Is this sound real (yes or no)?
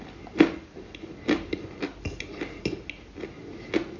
yes